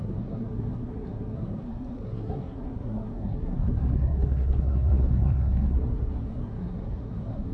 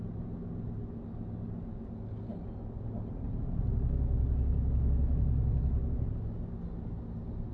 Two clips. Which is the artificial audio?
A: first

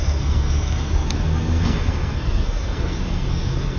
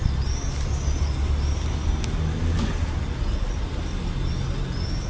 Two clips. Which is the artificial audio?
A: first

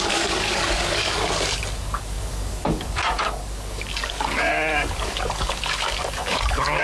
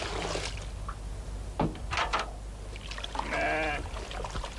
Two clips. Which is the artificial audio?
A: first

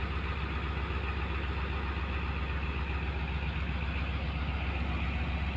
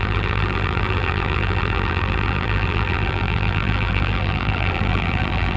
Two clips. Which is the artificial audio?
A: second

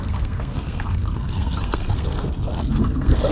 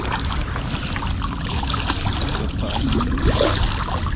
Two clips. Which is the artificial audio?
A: first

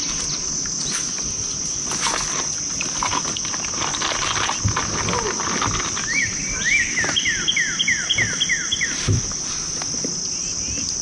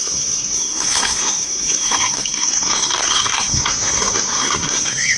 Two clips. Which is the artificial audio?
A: second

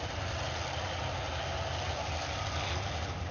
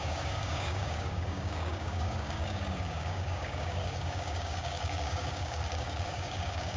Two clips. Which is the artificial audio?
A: second